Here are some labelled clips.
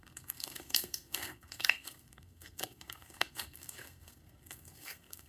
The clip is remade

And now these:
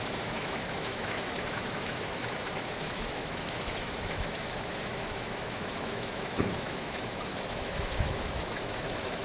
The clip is remade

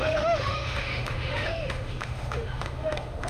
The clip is remade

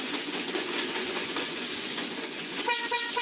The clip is remade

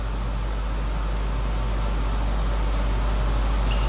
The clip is recorded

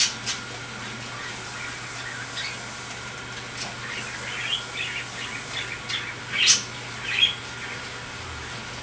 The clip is recorded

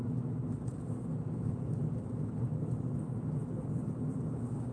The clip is recorded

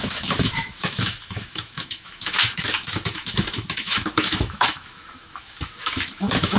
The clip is remade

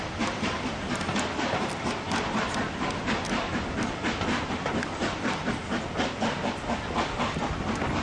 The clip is recorded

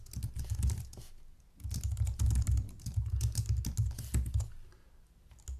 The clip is recorded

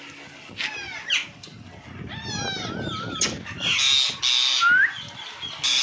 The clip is recorded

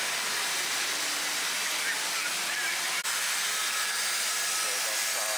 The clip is recorded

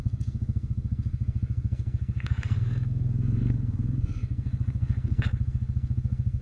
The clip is remade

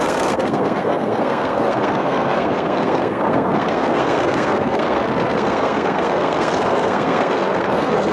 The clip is remade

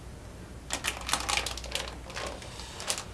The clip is recorded